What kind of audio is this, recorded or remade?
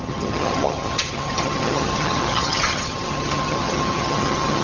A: remade